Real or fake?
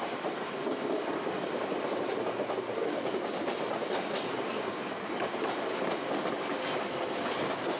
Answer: real